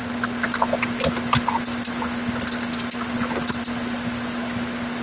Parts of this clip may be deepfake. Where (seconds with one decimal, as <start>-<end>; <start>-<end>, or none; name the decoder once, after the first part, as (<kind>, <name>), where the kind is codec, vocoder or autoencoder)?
none